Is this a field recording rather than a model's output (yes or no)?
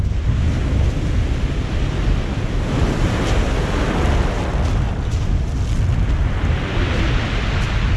yes